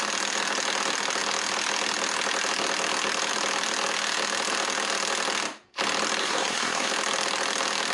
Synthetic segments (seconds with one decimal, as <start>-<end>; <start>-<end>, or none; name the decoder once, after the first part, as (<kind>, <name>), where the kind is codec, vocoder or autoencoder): 6.2-6.9 (codec, SNAC)